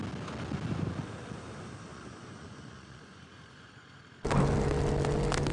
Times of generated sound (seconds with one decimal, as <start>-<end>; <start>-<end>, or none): 1.9-4.0